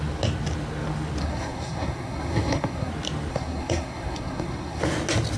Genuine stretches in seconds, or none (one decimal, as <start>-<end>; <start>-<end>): 0.0-1.2; 2.9-3.3; 4.8-5.4